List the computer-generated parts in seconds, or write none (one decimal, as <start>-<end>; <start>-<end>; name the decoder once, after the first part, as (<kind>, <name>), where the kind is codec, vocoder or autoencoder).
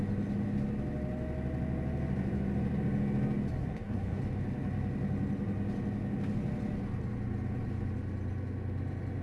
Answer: 3.6-4.2 (codec, SNAC)